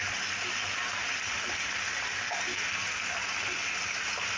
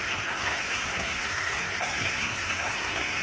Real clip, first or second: first